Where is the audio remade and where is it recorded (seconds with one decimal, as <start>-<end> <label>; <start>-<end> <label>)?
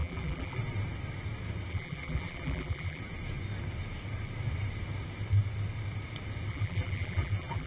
0.0-0.6 remade; 0.6-1.7 recorded; 1.7-3.0 remade; 3.0-6.5 recorded; 6.5-7.7 remade